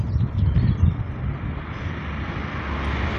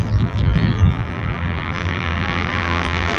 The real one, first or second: first